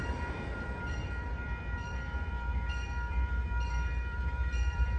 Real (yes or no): no